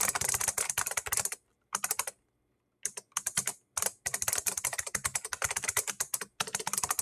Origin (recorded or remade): recorded